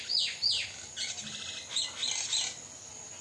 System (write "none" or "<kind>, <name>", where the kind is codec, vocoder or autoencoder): none